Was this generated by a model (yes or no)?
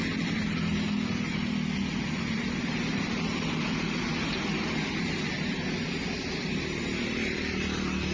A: yes